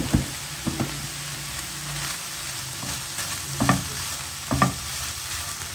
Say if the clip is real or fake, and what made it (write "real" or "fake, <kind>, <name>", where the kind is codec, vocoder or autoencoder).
real